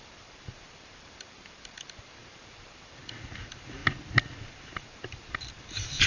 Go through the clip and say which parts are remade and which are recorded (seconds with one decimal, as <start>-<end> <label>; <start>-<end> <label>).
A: 0.0-3.8 remade; 3.8-4.5 recorded; 4.5-6.1 remade